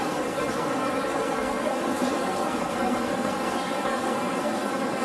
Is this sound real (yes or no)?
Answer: no